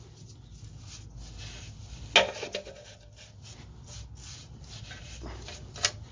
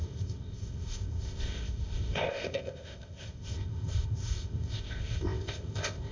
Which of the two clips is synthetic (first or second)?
second